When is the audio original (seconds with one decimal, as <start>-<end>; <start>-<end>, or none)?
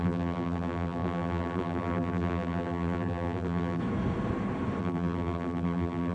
3.8-4.8